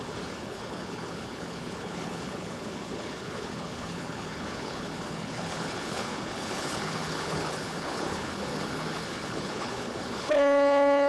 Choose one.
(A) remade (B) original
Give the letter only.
A